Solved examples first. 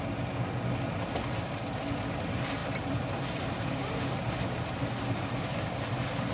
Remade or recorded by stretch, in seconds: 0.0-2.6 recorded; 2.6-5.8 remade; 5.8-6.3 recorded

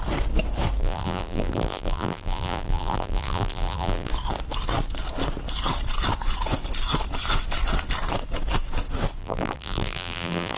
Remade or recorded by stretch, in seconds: 0.0-0.8 recorded; 0.8-4.1 remade; 4.1-9.2 recorded; 9.2-10.6 remade

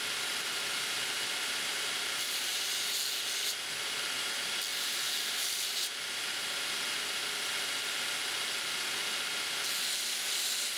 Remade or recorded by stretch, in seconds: 0.0-0.7 recorded; 0.7-3.0 remade; 3.0-4.7 recorded; 4.7-5.6 remade; 5.6-10.8 recorded

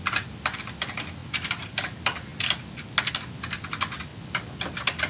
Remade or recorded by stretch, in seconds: 0.0-1.2 recorded; 1.2-1.8 remade; 1.8-5.1 recorded

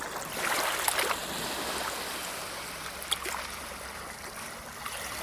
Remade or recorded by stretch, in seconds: 0.0-5.2 recorded